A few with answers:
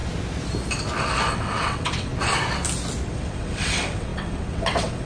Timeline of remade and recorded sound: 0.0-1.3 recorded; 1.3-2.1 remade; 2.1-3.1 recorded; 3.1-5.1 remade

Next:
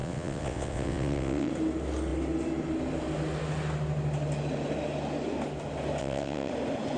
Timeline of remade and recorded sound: 0.0-1.5 remade; 1.5-6.0 recorded; 6.0-6.5 remade; 6.5-7.0 recorded

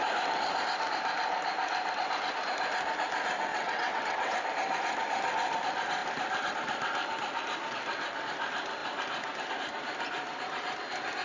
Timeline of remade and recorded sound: 0.0-3.5 recorded; 3.5-4.4 remade; 4.4-11.2 recorded

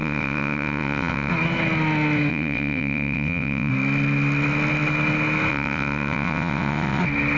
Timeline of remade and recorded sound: 0.0-1.3 remade; 1.3-2.3 recorded; 2.3-3.7 remade; 3.7-5.5 recorded; 5.5-7.0 remade; 7.0-7.4 recorded

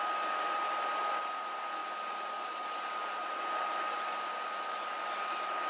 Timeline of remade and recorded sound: 0.0-5.7 recorded